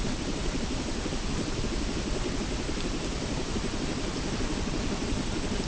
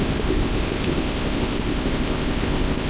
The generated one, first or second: second